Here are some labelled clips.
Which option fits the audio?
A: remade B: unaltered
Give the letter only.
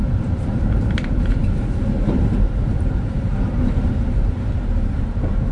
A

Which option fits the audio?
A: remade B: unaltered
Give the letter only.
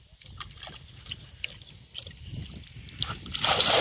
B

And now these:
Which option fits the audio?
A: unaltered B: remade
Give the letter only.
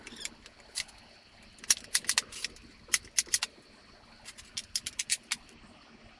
A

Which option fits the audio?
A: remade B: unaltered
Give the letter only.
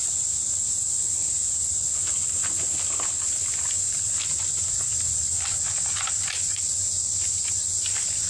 B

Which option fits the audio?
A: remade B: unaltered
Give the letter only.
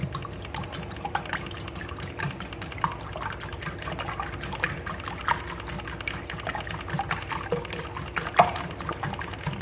B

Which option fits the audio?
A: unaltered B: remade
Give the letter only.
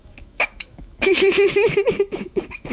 B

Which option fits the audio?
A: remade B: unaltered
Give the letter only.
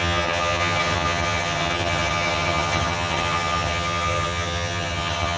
A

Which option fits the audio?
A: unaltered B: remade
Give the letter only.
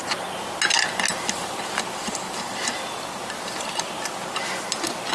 A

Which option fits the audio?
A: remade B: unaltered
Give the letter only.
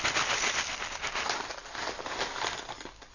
B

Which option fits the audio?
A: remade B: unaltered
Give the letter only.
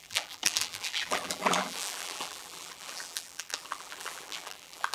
A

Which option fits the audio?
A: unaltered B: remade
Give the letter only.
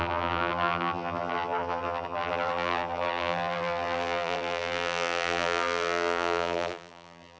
B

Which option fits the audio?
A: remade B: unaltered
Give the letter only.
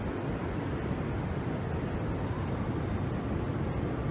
B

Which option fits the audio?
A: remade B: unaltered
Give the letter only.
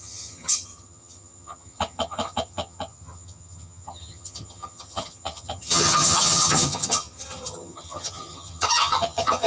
A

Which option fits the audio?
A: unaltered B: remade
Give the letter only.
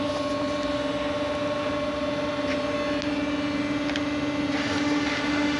A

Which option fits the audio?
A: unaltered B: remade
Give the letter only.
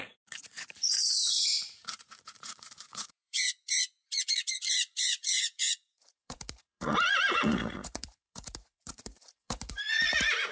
B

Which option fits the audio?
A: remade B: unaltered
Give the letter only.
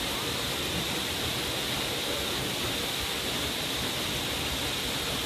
A